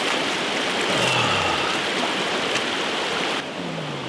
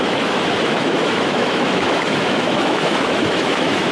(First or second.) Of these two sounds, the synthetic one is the second